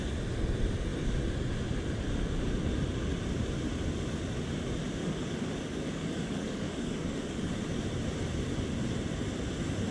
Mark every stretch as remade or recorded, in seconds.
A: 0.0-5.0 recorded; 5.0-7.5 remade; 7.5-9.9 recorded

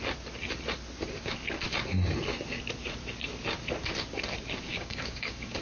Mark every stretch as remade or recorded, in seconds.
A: 0.0-4.7 recorded; 4.7-5.6 remade

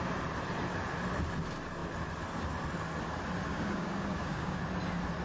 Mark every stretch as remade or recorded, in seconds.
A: 0.0-3.5 recorded; 3.5-4.6 remade; 4.6-5.2 recorded

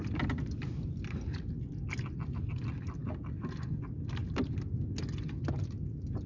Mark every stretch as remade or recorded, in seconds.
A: 0.0-6.3 recorded

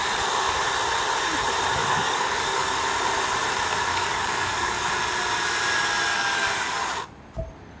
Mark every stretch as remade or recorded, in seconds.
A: 0.0-1.8 recorded; 1.8-2.7 remade; 2.7-3.9 recorded; 3.9-4.9 remade; 4.9-6.1 recorded; 6.1-6.8 remade; 6.8-7.8 recorded